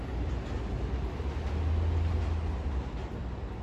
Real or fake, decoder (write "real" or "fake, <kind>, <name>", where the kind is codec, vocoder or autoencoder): real